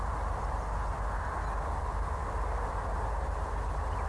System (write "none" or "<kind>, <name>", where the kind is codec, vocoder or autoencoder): none